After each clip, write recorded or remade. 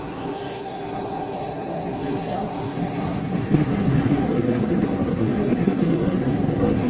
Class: remade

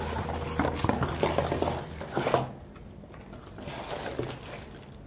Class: recorded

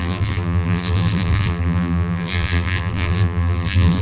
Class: remade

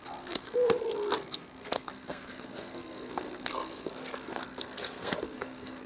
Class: remade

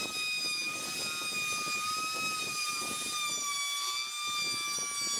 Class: recorded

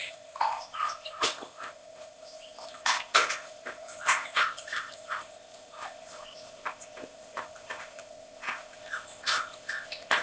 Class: remade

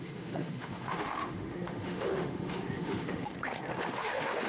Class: remade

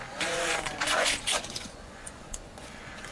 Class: remade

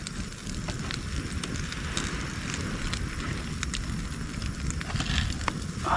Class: recorded